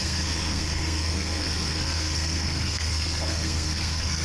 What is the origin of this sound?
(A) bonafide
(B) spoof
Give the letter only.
B